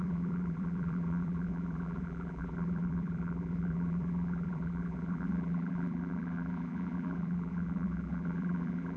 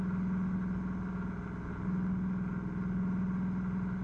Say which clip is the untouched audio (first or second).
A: second